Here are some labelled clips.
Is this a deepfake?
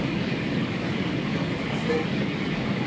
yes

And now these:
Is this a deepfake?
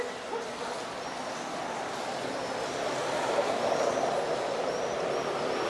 no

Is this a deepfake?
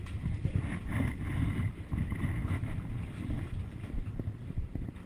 no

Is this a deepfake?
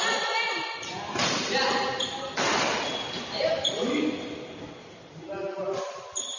no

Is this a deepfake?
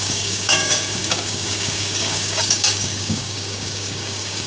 yes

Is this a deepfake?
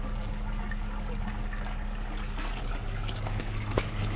yes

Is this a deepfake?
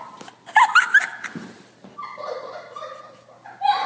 no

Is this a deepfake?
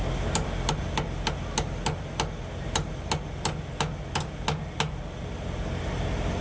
no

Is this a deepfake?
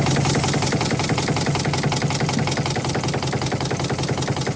no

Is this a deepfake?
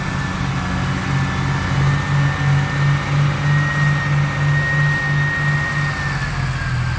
no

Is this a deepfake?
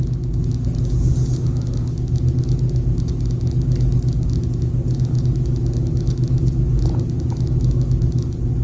no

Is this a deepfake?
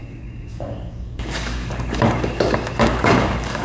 yes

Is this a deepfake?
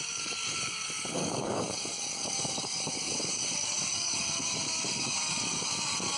yes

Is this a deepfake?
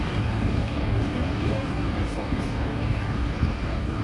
yes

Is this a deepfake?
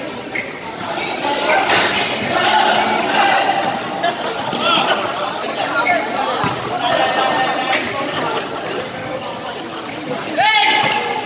no